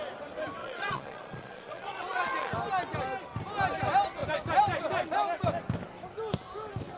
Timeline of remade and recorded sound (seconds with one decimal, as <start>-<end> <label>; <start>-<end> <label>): 0.0-0.6 recorded; 0.6-2.5 remade; 2.5-7.0 recorded